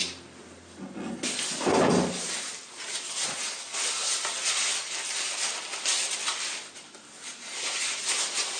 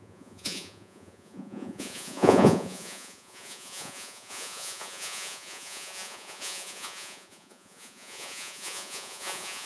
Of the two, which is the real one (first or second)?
first